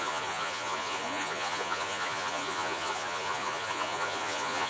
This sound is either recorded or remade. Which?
remade